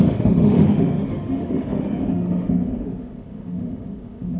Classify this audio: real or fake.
fake